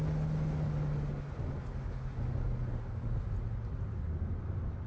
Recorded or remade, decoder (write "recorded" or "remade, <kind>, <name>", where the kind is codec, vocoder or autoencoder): recorded